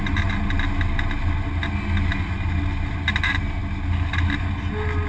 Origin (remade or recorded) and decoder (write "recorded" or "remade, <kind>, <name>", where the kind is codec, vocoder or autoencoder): recorded